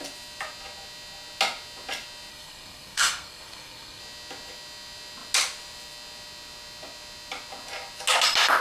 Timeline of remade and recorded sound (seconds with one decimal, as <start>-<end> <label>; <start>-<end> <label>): 0.0-2.3 recorded; 2.3-4.0 remade; 4.0-8.6 recorded